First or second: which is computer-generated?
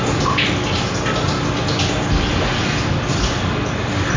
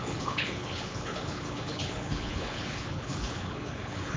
second